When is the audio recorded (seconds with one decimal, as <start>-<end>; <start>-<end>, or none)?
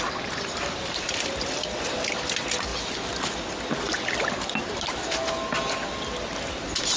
0.0-7.0